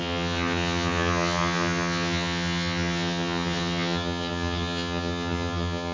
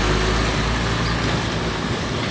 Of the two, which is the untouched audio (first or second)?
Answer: second